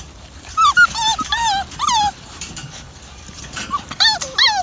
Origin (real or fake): real